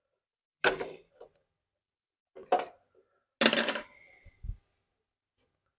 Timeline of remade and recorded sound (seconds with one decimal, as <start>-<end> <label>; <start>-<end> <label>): 0.0-5.8 recorded